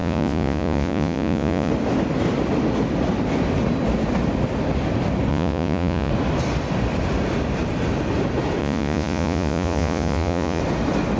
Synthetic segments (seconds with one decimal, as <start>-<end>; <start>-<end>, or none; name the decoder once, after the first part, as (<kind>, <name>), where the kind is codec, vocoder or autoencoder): 0.0-1.7 (vocoder, Vocos); 5.3-6.1; 8.6-10.6